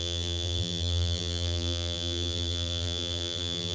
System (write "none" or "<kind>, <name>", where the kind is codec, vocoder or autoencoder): vocoder, BigVGAN v2